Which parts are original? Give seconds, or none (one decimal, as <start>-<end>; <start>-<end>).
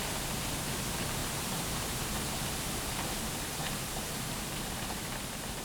0.0-1.2; 2.4-3.6; 5.0-5.6